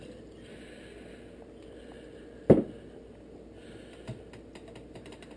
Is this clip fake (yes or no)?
no